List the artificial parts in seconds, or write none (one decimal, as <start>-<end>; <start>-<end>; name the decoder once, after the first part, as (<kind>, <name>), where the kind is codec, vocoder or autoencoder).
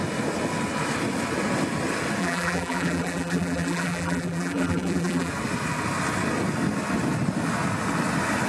2.2-5.3 (vocoder, BigVGAN v2)